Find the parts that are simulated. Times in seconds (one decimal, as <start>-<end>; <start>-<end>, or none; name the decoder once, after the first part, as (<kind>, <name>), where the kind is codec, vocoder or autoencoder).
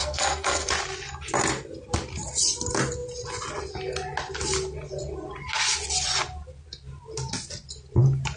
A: 0.0-0.7 (codec, SNAC)